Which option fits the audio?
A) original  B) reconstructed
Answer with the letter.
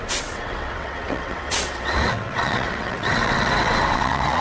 B